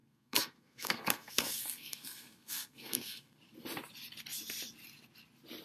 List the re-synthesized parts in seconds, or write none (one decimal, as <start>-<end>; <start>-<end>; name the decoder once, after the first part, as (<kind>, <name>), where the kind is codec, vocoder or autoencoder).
0.0-3.4 (codec, SNAC)